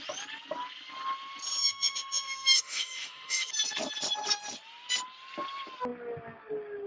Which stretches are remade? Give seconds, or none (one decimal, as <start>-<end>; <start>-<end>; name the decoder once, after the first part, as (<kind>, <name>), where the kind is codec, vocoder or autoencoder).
1.6-3.5 (autoencoder, DAC-VAE)